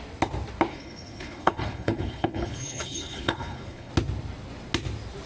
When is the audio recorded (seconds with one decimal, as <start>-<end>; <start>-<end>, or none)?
0.0-0.7; 3.9-5.3